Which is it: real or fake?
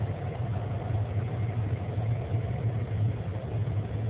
real